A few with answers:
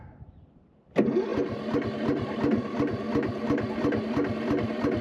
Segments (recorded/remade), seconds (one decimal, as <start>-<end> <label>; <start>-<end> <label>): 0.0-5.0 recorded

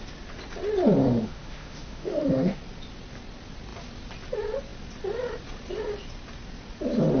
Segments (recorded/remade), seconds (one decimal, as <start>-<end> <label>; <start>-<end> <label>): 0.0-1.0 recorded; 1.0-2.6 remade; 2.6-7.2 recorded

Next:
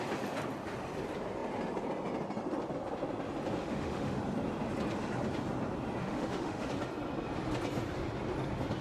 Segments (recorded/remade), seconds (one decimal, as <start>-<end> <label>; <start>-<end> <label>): 0.0-3.6 recorded; 3.6-4.2 remade; 4.2-6.0 recorded; 6.0-6.7 remade; 6.7-8.8 recorded

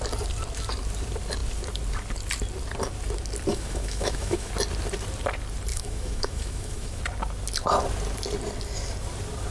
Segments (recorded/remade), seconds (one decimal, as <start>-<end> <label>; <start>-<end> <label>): 0.0-3.5 recorded; 3.5-4.5 remade; 4.5-5.7 recorded; 5.7-7.0 remade; 7.0-9.5 recorded

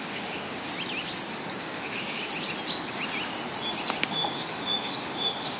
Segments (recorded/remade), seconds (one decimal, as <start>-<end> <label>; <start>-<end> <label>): 0.0-0.7 remade; 0.7-1.6 recorded; 1.6-2.2 remade; 2.2-4.1 recorded; 4.1-5.6 remade

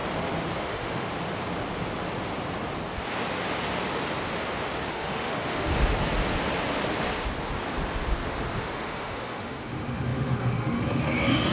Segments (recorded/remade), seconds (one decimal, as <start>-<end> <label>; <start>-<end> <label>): 0.0-0.6 recorded; 0.6-1.1 remade; 1.1-4.9 recorded; 4.9-5.7 remade; 5.7-8.6 recorded; 8.6-11.5 remade

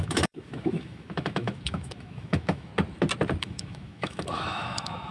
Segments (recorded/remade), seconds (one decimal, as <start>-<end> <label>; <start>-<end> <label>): 0.0-2.7 remade; 2.7-3.4 recorded; 3.4-5.1 remade

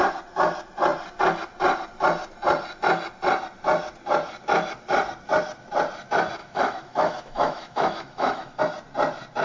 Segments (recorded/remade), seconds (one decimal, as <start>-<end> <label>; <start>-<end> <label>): 0.0-6.4 recorded; 6.4-8.6 remade; 8.6-9.4 recorded